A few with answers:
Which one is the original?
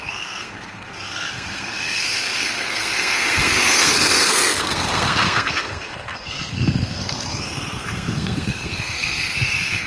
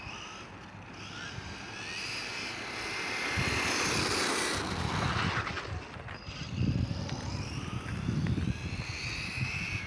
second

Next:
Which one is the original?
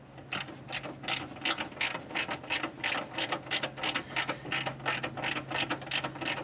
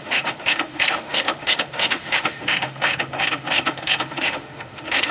first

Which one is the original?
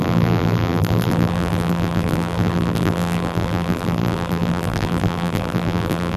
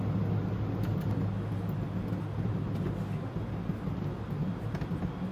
second